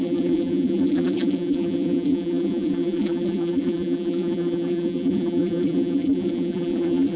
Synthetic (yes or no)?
yes